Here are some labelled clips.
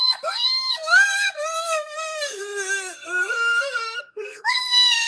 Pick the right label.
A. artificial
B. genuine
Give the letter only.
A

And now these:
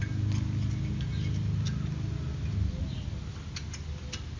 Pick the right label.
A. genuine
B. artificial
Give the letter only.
A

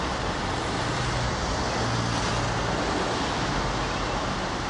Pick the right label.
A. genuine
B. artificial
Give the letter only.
A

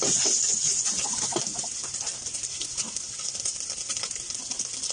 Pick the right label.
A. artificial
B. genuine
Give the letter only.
B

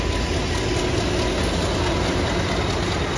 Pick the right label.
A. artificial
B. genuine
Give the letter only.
B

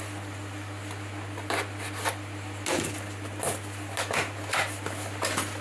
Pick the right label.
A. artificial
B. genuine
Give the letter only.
B